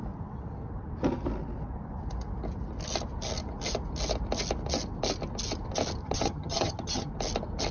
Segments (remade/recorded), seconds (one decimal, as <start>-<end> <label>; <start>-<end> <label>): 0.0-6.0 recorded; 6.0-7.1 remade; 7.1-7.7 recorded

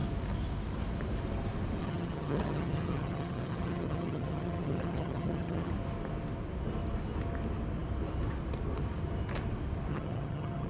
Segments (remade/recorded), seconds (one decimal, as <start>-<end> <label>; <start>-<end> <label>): 0.0-1.8 recorded; 1.8-5.7 remade; 5.7-9.9 recorded; 9.9-10.7 remade

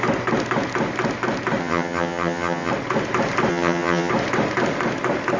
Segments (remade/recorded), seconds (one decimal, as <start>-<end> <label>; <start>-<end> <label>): 0.0-1.6 recorded; 1.6-2.7 remade; 2.7-3.5 recorded; 3.5-4.1 remade; 4.1-5.4 recorded